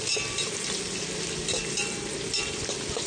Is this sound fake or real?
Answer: real